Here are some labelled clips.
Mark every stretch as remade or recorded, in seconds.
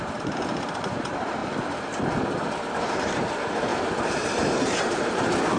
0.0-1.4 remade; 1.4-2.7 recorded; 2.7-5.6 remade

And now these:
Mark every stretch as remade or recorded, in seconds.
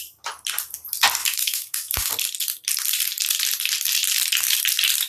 0.0-1.2 recorded; 1.2-2.1 remade; 2.1-5.1 recorded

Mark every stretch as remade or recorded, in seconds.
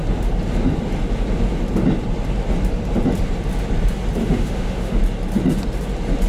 0.0-4.2 recorded; 4.2-5.0 remade; 5.0-6.3 recorded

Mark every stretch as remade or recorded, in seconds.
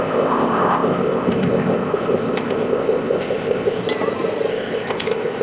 0.0-3.8 remade; 3.8-4.5 recorded; 4.5-5.4 remade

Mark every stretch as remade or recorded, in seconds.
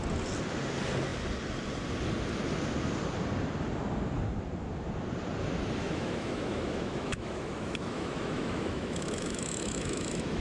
0.0-5.8 recorded; 5.8-10.4 remade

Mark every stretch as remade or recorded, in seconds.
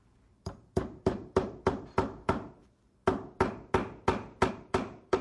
0.0-2.6 remade; 2.6-4.5 recorded; 4.5-5.2 remade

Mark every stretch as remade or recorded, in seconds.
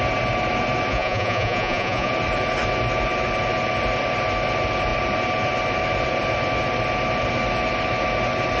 0.0-0.9 recorded; 0.9-2.1 remade; 2.1-8.6 recorded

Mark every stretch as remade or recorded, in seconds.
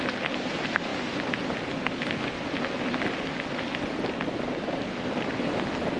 0.0-6.0 recorded